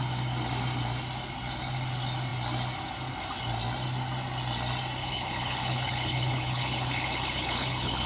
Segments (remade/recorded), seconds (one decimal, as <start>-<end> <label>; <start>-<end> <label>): 0.0-5.0 recorded; 5.0-8.1 remade